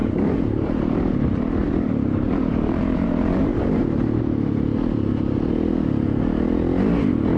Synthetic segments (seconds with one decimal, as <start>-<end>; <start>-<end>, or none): 0.0-1.2; 1.6-4.2